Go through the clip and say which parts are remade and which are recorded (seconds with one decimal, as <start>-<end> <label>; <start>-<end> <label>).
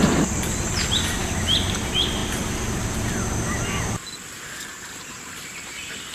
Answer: 0.0-6.1 recorded